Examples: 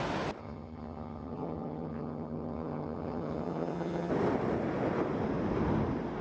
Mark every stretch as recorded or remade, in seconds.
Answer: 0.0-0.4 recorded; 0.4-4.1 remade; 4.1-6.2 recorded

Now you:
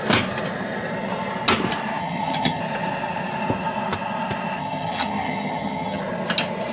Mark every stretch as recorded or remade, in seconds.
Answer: 0.0-2.0 recorded; 2.0-2.6 remade; 2.6-4.6 recorded; 4.6-6.0 remade; 6.0-6.7 recorded

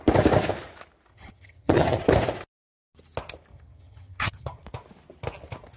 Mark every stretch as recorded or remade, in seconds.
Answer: 0.0-1.1 recorded; 1.1-2.1 remade; 2.1-3.5 recorded; 3.5-4.6 remade; 4.6-5.8 recorded

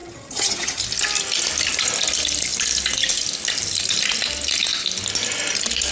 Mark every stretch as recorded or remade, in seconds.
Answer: 0.0-0.8 remade; 0.8-5.9 recorded

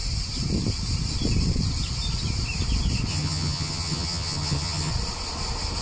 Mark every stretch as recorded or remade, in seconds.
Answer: 0.0-3.1 recorded; 3.1-4.9 remade; 4.9-5.8 recorded